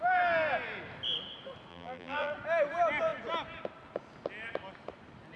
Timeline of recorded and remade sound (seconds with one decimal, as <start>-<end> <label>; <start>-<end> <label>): 0.0-1.7 recorded; 1.7-2.3 remade; 2.3-5.4 recorded